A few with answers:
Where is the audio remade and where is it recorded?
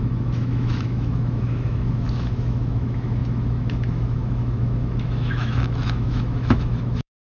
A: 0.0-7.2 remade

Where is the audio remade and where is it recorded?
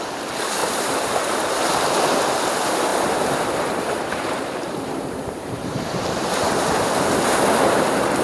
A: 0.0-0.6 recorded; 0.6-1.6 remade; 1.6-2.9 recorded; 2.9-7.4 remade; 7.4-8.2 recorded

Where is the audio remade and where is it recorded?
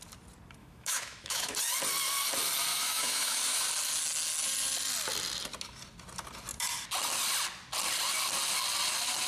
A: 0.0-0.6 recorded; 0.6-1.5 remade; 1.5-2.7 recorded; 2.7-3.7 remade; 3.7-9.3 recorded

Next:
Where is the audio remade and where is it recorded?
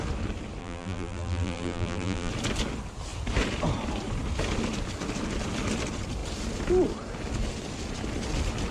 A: 0.0-0.6 recorded; 0.6-2.3 remade; 2.3-8.7 recorded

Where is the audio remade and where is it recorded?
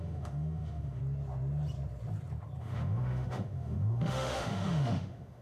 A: 0.0-1.0 remade; 1.0-2.6 recorded; 2.6-5.4 remade